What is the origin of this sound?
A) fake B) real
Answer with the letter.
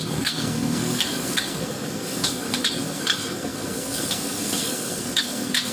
A